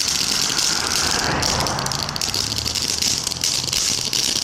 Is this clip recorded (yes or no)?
yes